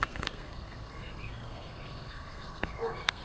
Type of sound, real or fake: fake